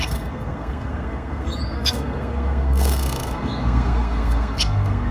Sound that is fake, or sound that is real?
fake